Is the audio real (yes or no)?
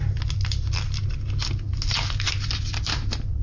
yes